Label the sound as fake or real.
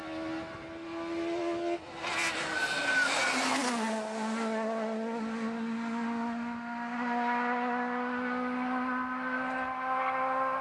real